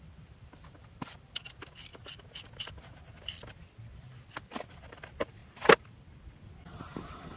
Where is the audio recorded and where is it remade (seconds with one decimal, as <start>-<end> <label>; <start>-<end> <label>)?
0.0-1.9 remade; 1.9-4.7 recorded; 4.7-7.4 remade

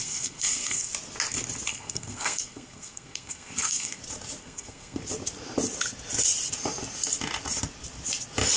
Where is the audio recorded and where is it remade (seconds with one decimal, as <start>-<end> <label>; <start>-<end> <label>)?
0.0-0.9 remade; 0.9-1.7 recorded; 1.7-4.0 remade; 4.0-4.4 recorded; 4.4-5.0 remade; 5.0-8.6 recorded

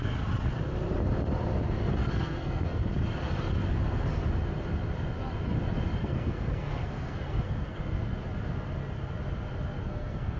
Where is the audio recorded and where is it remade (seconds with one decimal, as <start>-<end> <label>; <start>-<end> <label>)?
0.0-2.0 recorded; 2.0-2.8 remade; 2.8-6.0 recorded; 6.0-7.8 remade; 7.8-9.8 recorded; 9.8-10.4 remade

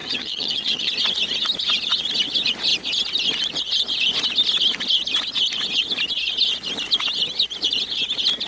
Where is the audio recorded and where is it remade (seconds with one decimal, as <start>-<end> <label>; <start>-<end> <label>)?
0.0-0.9 remade; 0.9-8.5 recorded

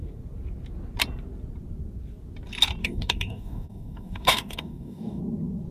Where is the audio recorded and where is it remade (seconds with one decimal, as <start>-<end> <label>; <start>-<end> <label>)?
0.0-2.8 recorded; 2.8-5.2 remade; 5.2-5.7 recorded

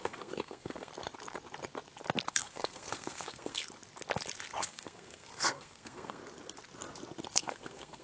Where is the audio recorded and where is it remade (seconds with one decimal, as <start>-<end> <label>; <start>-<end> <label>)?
0.0-0.9 remade; 0.9-2.3 recorded; 2.3-3.6 remade; 3.6-4.6 recorded; 4.6-6.2 remade; 6.2-7.3 recorded; 7.3-8.0 remade

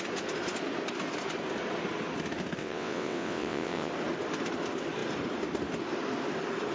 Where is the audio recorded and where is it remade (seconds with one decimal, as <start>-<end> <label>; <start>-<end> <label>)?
0.0-2.6 recorded; 2.6-3.9 remade; 3.9-6.7 recorded

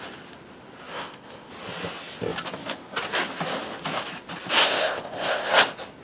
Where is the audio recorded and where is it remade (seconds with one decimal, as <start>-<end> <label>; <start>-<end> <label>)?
0.0-0.9 recorded; 0.9-1.5 remade; 1.5-4.6 recorded; 4.6-5.5 remade; 5.5-6.0 recorded